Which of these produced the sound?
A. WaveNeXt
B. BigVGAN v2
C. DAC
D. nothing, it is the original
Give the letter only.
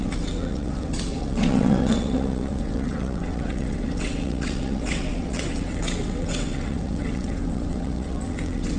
A